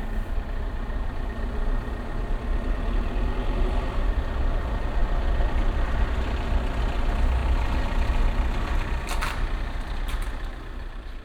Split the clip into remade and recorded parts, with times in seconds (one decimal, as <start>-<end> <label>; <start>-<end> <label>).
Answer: 0.0-11.2 recorded